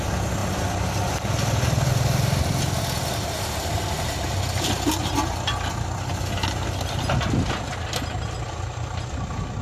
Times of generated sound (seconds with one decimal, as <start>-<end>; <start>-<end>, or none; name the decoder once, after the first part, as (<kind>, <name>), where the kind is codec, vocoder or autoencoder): none